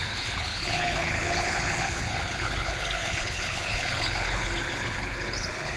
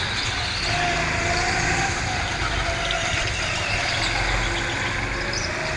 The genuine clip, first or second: second